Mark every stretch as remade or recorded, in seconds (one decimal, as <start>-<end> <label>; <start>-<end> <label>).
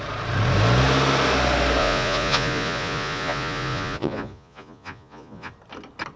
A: 0.0-1.8 recorded; 1.8-5.5 remade; 5.5-6.2 recorded